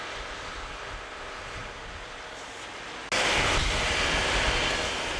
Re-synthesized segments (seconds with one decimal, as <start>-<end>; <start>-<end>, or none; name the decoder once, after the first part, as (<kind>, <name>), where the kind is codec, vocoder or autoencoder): none